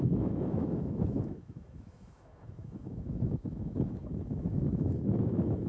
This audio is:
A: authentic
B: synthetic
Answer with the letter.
B